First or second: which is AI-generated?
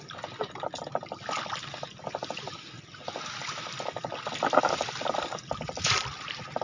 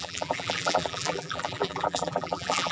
second